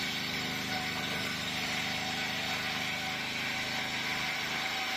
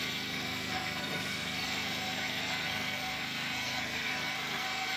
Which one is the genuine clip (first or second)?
first